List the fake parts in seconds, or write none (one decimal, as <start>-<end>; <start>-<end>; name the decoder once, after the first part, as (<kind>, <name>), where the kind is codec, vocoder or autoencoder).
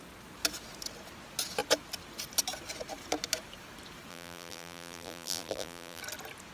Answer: 4.1-6.0 (vocoder, BigVGAN v2)